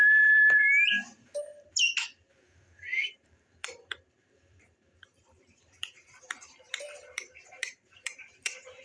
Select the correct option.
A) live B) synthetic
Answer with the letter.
B